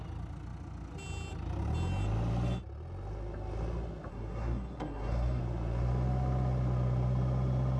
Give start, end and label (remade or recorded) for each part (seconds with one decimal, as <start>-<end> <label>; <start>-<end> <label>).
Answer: 0.0-4.1 recorded; 4.1-5.4 remade; 5.4-7.8 recorded